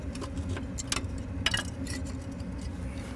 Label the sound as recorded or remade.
recorded